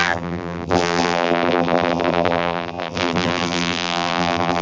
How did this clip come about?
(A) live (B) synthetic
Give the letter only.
B